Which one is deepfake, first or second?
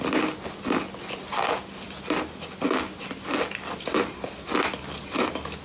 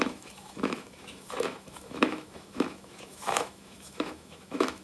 second